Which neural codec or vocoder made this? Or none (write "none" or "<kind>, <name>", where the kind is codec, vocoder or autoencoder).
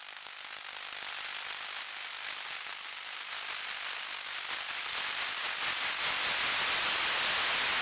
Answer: none